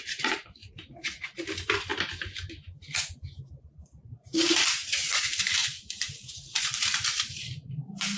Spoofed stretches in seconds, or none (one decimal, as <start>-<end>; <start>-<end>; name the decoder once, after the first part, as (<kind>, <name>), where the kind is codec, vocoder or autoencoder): 0.0-1.9 (vocoder, BigVGAN v2); 4.0-8.2